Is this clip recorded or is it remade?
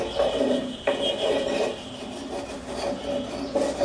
recorded